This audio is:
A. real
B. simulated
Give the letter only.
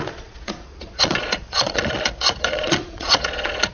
B